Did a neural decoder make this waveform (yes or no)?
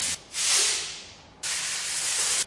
no